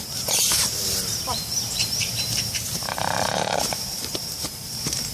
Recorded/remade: remade